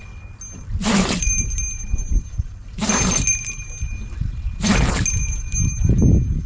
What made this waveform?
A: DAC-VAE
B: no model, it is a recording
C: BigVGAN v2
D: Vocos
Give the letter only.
B